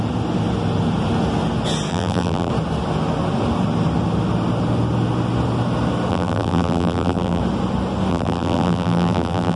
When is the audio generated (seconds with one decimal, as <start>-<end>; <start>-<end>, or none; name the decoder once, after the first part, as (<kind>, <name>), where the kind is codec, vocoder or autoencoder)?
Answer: 1.9-2.5 (vocoder, BigVGAN v2); 6.1-7.4; 8.1-9.6